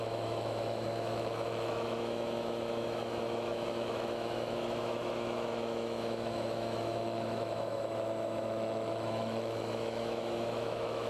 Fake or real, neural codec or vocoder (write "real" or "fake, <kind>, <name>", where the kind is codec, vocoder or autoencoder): fake, autoencoder, DAC-VAE